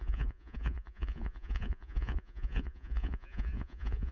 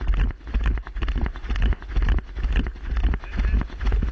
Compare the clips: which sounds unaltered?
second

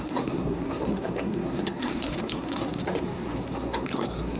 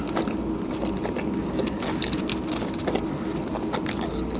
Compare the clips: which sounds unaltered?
second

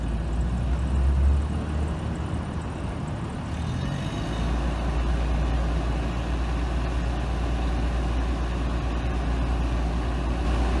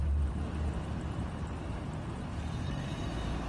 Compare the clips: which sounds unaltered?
first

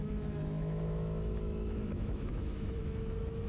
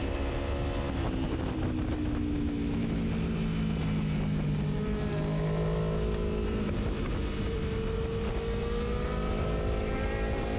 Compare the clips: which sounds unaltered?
second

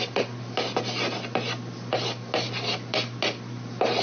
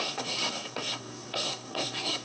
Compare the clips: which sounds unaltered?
first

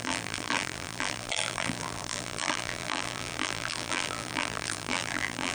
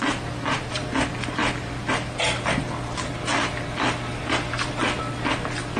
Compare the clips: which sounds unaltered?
second